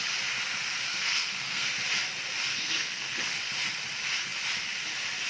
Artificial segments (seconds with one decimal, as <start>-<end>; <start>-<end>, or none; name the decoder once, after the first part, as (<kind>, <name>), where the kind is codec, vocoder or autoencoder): 0.9-1.7 (codec, SNAC); 2.5-3.4